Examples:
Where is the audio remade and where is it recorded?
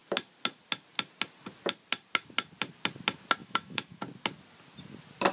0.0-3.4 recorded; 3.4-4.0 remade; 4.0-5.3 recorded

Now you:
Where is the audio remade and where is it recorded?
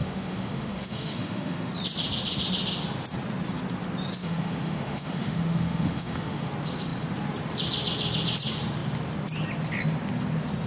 0.0-1.7 remade; 1.7-4.2 recorded; 4.2-6.5 remade; 6.5-10.7 recorded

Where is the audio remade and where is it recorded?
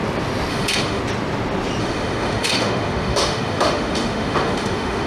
0.0-0.5 recorded; 0.5-1.0 remade; 1.0-1.8 recorded; 1.8-5.1 remade